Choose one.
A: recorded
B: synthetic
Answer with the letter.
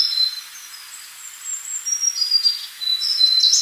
A